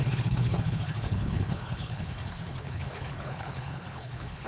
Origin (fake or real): fake